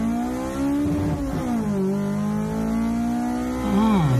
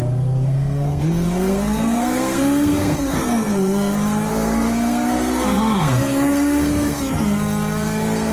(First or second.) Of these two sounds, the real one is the first